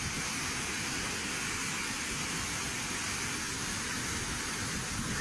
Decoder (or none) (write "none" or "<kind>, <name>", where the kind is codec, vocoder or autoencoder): none